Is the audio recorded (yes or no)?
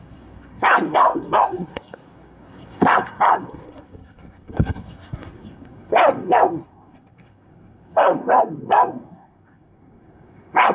no